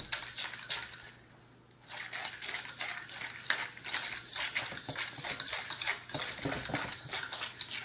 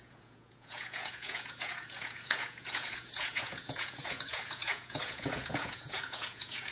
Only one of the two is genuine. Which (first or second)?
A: first